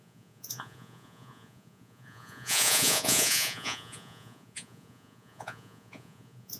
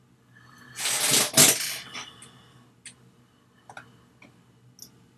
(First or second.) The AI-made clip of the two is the first